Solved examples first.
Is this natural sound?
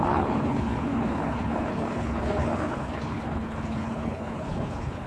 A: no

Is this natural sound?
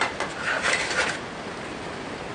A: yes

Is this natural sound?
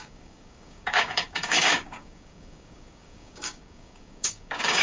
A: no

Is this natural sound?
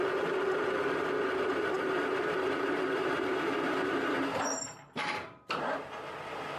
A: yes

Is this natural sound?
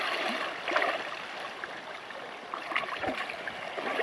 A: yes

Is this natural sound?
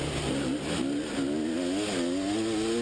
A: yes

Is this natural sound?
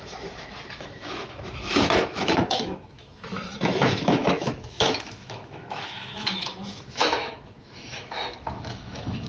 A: no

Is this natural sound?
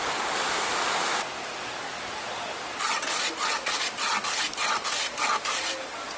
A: yes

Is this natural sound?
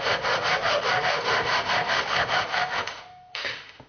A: no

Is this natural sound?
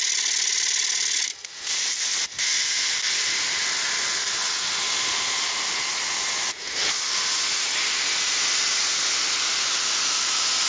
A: yes